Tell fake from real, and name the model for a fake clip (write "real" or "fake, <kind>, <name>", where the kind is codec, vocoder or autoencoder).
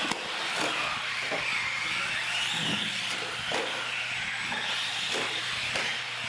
real